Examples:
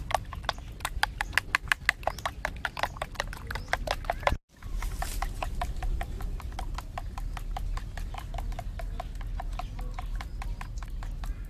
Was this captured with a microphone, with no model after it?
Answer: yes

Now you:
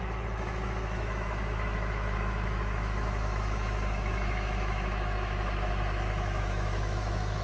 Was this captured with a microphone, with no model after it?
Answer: no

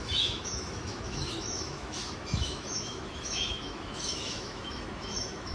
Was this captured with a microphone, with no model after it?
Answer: no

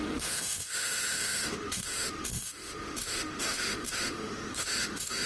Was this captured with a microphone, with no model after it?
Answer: no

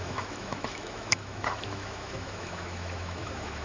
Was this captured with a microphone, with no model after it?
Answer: no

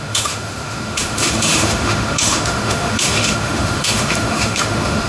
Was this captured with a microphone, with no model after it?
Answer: no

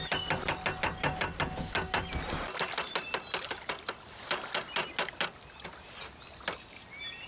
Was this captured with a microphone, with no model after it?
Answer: yes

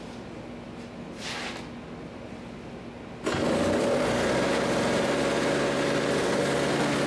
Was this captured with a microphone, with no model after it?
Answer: yes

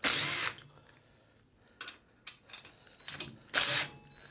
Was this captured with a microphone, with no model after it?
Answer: yes